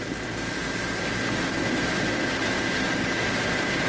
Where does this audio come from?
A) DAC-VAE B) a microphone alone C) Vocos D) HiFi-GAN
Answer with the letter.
B